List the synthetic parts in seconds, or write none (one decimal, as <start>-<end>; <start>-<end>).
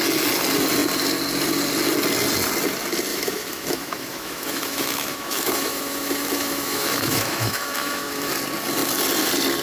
3.1-8.3